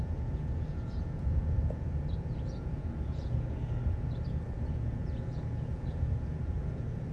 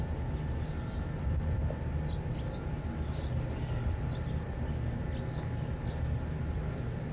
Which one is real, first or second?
second